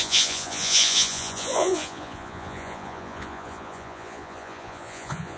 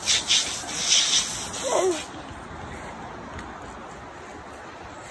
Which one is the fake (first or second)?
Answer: first